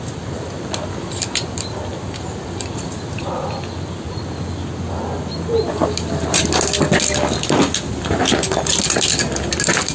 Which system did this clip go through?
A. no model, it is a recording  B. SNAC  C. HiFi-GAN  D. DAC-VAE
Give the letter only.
A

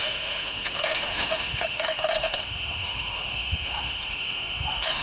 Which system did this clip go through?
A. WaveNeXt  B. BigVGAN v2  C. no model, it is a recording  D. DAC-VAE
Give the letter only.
D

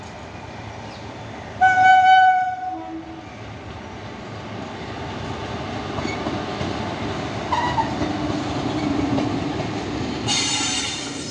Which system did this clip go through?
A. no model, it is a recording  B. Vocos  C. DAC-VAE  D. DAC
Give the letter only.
A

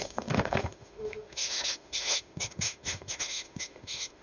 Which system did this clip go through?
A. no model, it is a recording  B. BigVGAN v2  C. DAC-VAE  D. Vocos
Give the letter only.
C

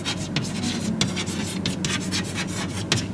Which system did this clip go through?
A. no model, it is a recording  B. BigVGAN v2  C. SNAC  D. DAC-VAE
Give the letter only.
A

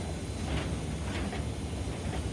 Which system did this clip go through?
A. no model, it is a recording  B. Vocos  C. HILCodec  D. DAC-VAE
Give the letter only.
A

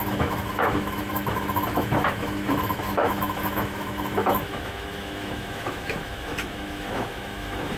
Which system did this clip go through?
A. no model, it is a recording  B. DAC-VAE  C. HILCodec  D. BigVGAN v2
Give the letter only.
B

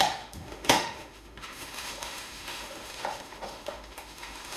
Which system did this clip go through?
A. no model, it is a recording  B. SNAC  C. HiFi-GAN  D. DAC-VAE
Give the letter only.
D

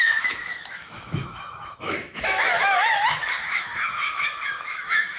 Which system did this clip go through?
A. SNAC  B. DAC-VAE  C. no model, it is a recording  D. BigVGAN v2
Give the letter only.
B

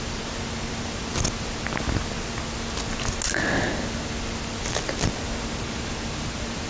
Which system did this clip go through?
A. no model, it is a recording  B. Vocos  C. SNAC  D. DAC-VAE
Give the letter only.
A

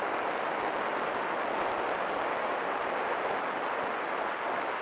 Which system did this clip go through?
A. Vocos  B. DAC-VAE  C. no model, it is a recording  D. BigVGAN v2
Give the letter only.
C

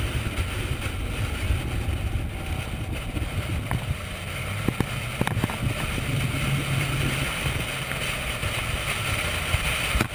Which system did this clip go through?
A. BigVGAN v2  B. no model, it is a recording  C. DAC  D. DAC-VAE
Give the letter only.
B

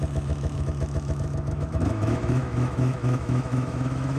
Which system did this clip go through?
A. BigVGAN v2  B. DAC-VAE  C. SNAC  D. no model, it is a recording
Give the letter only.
B